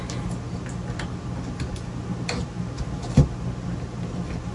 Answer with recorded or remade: recorded